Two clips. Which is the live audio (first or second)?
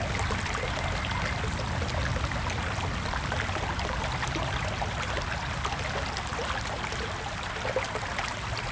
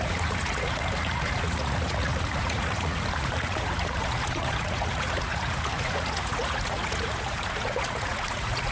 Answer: first